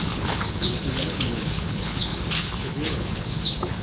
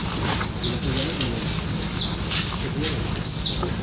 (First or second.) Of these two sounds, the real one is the second